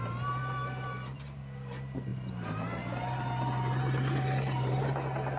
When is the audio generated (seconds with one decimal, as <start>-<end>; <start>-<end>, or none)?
none